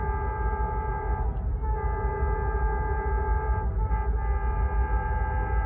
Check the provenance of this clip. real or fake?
real